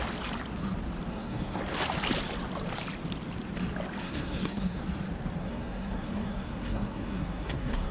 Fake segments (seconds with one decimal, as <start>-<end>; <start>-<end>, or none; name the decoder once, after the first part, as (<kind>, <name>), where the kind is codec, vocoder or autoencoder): 1.1-1.6 (codec, SNAC); 4.0-4.8; 5.4-7.9